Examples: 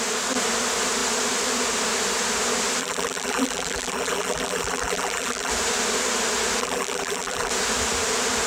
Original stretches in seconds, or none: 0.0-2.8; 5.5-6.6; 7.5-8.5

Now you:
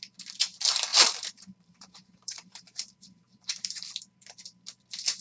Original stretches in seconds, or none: 0.0-0.9; 4.0-5.2

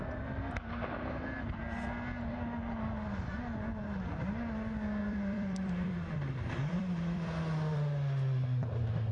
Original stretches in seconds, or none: 0.0-5.0